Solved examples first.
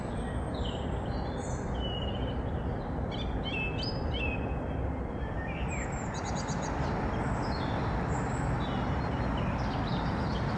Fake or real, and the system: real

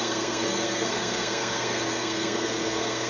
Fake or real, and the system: fake, codec, SNAC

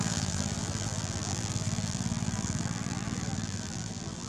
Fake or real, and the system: fake, vocoder, BigVGAN v2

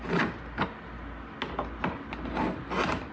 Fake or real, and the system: real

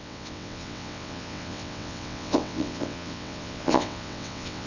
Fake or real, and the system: fake, vocoder, WaveNeXt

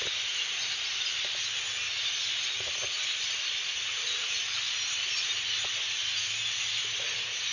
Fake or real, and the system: real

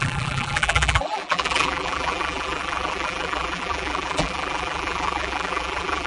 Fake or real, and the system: fake, vocoder, BigVGAN v2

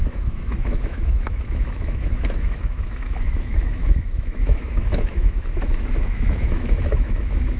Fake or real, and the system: fake, autoencoder, DAC-VAE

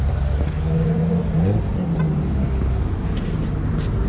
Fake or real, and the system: real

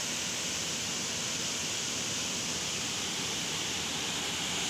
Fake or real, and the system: real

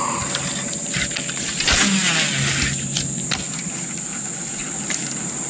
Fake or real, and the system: real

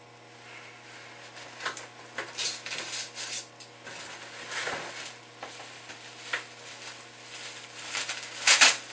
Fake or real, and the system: real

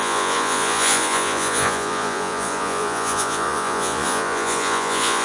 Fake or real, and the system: fake, vocoder, Vocos